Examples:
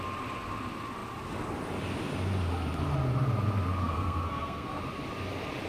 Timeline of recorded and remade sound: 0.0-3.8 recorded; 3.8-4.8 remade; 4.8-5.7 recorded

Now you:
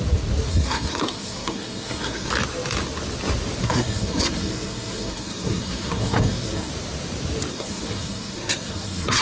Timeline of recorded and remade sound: 0.0-0.5 recorded; 0.5-2.3 remade; 2.3-3.6 recorded; 3.6-6.7 remade; 6.7-7.5 recorded; 7.5-9.2 remade

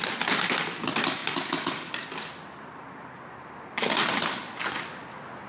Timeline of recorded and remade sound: 0.0-5.5 recorded

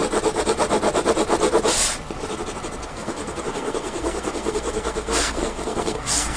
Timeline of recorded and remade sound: 0.0-2.8 recorded; 2.8-6.4 remade

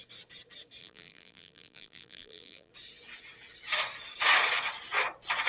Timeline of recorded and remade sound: 0.0-0.8 recorded; 0.8-2.7 remade; 2.7-5.5 recorded